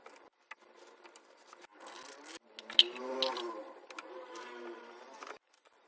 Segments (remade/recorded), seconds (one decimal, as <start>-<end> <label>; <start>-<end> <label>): 0.0-5.9 recorded